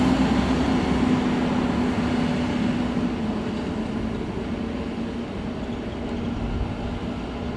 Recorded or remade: recorded